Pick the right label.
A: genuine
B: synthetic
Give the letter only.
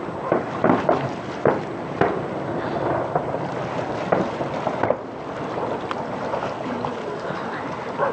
A